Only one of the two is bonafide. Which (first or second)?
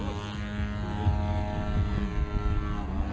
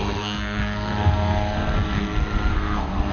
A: first